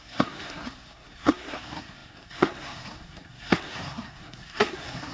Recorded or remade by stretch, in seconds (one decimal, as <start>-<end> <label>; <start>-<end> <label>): 0.0-5.1 remade